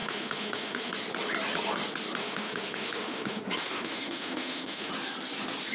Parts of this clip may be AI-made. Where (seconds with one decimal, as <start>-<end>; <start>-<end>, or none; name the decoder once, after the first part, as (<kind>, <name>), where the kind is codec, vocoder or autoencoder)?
0.0-0.9 (autoencoder, DAC-VAE); 2.2-4.9